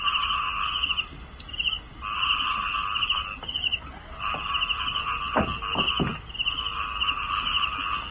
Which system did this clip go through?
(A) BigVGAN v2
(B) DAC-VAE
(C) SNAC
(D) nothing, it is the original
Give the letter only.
D